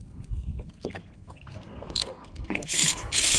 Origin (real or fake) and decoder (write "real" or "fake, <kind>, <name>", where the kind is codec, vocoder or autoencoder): fake, codec, SNAC